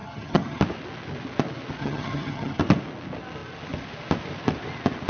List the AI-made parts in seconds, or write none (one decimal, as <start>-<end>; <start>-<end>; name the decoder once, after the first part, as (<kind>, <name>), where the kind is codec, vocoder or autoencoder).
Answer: 0.0-0.6 (vocoder, HiFi-GAN); 1.8-2.6

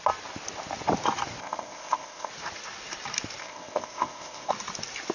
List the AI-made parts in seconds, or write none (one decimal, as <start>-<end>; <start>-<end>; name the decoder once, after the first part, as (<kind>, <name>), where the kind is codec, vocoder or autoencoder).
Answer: 1.4-2.3 (codec, ZipCodec); 3.4-4.5

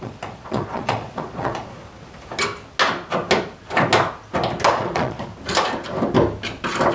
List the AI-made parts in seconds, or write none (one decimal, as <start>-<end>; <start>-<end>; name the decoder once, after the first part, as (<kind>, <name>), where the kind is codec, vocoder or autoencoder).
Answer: 0.0-1.8 (vocoder, Vocos); 4.7-5.3

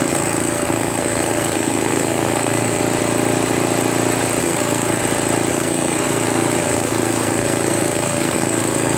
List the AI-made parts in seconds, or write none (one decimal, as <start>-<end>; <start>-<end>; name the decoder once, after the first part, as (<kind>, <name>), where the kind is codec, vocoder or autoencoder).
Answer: 0.0-2.8 (codec, SNAC); 4.4-5.0; 5.5-9.0

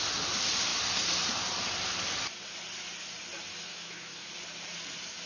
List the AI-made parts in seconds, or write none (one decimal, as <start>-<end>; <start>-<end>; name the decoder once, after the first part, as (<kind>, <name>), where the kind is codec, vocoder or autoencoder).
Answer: 3.7-4.3 (autoencoder, DAC-VAE)